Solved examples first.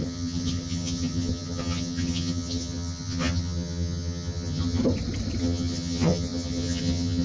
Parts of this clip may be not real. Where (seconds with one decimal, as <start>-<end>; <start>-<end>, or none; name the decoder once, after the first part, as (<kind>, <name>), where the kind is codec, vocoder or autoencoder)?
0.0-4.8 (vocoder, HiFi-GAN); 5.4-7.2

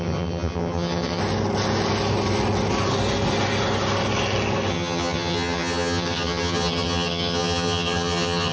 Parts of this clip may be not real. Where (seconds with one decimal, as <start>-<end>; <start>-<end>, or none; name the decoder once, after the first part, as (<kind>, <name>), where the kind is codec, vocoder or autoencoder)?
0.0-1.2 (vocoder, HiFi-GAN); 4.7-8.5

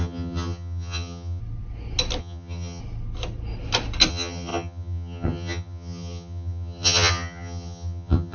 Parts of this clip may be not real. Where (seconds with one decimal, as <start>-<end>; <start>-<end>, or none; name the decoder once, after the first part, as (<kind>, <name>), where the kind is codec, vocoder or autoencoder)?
0.0-1.4 (vocoder, HiFi-GAN); 2.2-2.8; 4.1-8.3